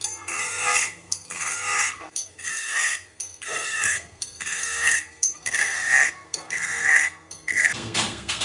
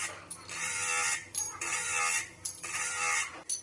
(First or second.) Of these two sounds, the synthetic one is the first